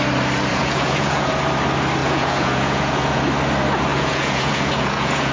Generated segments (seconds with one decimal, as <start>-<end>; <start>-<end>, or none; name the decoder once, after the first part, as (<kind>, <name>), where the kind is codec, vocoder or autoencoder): 0.5-1.3 (vocoder, Vocos); 2.0-3.2; 3.9-5.3